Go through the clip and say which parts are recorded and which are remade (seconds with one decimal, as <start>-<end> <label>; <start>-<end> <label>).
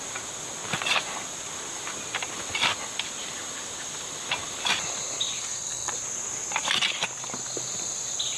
0.0-5.4 recorded; 5.4-5.9 remade; 5.9-8.4 recorded